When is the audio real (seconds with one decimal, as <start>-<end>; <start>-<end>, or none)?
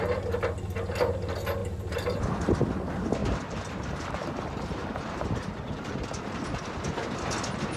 0.0-1.6; 2.2-3.2; 5.9-7.8